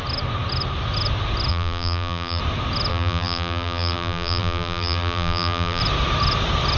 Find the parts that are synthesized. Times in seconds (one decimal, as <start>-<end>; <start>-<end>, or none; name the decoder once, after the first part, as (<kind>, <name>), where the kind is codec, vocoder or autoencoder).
1.5-2.4 (vocoder, BigVGAN v2); 2.9-5.8